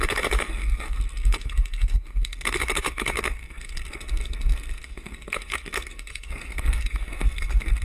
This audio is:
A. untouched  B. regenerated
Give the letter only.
B